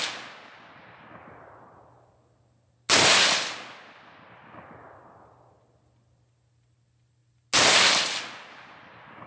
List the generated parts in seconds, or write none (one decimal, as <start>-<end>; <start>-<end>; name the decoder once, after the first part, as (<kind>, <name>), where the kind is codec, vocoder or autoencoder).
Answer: none

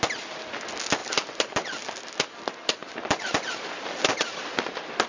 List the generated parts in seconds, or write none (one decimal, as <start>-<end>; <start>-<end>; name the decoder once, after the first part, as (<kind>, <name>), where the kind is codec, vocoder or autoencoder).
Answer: none

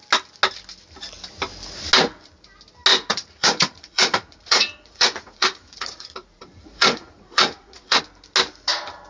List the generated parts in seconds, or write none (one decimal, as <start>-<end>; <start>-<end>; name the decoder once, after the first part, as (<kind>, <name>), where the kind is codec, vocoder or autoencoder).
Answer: 2.9-8.0 (vocoder, Vocos)

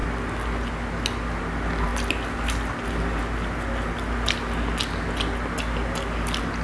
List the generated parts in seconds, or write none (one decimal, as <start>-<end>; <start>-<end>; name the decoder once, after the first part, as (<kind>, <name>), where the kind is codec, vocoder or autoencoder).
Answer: none